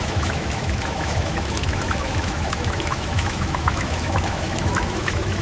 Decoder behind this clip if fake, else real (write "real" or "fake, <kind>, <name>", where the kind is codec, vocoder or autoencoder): fake, autoencoder, DAC-VAE